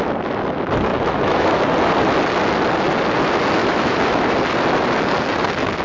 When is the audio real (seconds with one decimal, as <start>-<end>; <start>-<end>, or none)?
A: 0.0-0.9; 1.6-3.6; 4.4-5.8